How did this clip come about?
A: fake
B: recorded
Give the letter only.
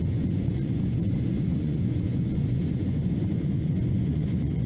A